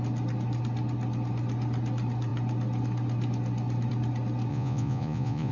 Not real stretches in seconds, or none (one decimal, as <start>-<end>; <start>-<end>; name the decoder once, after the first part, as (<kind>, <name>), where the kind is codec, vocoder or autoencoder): 4.5-5.5 (vocoder, Vocos)